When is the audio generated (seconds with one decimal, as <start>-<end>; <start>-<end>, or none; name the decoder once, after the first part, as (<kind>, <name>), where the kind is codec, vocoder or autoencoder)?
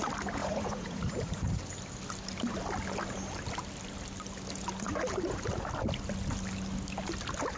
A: 0.4-1.6 (vocoder, Vocos)